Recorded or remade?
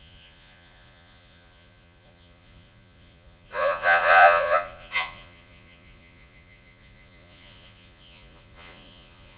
remade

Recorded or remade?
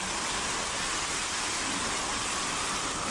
recorded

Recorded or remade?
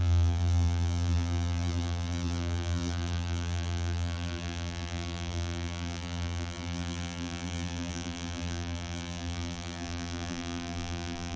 remade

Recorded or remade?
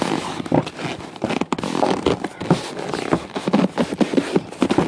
recorded